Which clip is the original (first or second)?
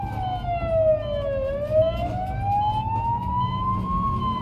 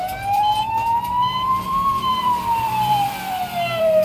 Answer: first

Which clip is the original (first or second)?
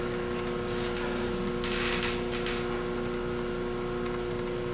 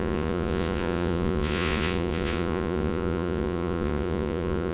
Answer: first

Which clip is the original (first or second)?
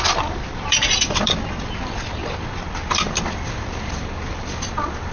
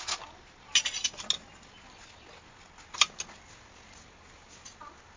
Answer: second